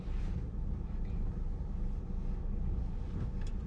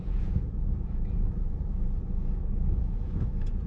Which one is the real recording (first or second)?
first